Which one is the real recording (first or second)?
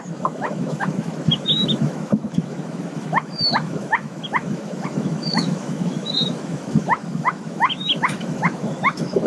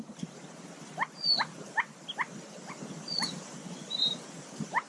second